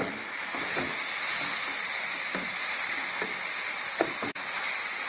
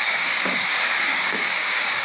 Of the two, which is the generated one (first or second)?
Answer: second